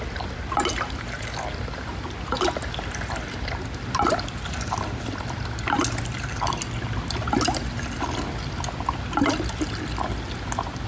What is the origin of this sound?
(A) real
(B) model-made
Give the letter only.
A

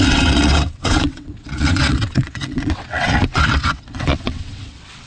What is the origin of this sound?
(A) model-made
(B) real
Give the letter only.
A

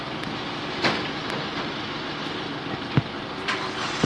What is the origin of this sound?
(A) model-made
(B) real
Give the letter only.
B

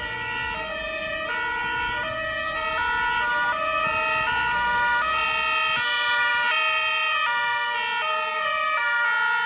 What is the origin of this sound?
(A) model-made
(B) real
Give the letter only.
B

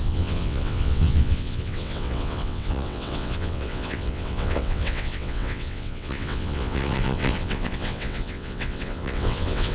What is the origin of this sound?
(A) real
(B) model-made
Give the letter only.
B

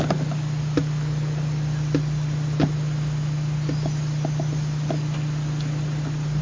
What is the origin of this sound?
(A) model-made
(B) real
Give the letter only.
B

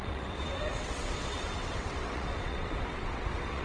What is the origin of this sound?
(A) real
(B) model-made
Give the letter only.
B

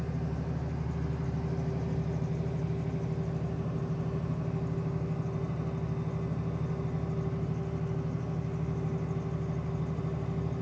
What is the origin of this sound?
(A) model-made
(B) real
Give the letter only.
B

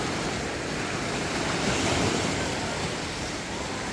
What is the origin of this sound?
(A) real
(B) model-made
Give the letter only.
A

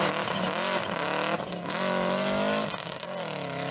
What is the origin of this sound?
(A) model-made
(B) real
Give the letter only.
B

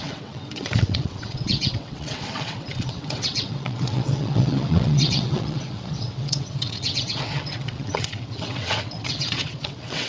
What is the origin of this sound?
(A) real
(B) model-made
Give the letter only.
B